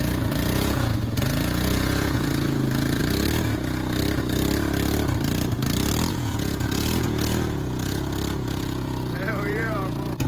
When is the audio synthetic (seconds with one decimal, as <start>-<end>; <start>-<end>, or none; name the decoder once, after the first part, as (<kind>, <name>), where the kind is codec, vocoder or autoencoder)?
0.0-3.0 (vocoder, Vocos); 6.1-10.3